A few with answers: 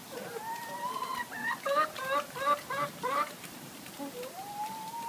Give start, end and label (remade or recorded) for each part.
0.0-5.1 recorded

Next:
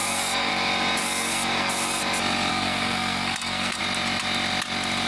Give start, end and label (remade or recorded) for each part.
0.0-0.5 remade; 0.5-1.0 recorded; 1.0-2.0 remade; 2.0-2.5 recorded; 2.5-3.8 remade; 3.8-5.1 recorded

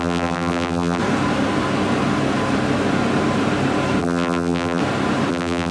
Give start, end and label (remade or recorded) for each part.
0.0-1.0 remade; 1.0-4.0 recorded; 4.0-4.8 remade; 4.8-5.3 recorded; 5.3-5.7 remade

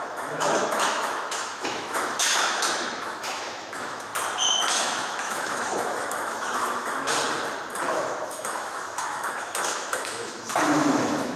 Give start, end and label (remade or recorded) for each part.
0.0-4.1 remade; 4.1-4.7 recorded; 4.7-7.1 remade; 7.1-7.9 recorded; 7.9-11.4 remade